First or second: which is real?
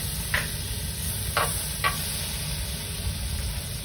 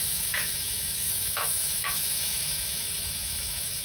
first